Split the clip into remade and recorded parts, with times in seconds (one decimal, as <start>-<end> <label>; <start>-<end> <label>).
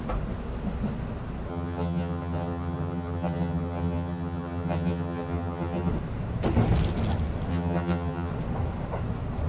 0.0-1.5 recorded; 1.5-5.9 remade; 5.9-7.5 recorded; 7.5-8.3 remade; 8.3-9.5 recorded